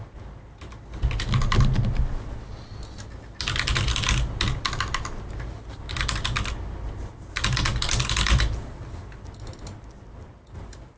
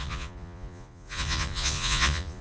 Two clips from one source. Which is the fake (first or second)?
second